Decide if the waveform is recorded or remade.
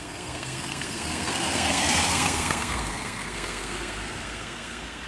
remade